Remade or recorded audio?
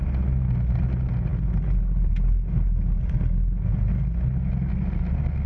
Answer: recorded